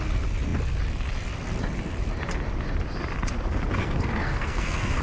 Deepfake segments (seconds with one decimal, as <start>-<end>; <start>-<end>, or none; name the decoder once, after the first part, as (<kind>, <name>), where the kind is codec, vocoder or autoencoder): 3.8-5.0 (codec, SNAC)